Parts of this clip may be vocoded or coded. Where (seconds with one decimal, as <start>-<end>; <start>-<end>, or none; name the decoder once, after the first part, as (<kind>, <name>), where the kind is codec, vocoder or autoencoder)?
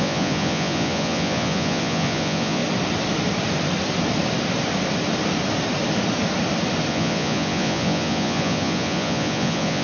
0.0-2.6 (vocoder, Vocos); 6.9-9.8